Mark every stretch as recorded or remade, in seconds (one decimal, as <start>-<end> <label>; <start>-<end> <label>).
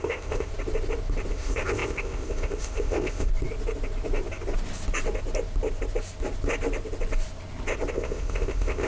0.0-0.5 remade; 0.5-1.3 recorded; 1.3-3.3 remade; 3.3-7.9 recorded; 7.9-8.9 remade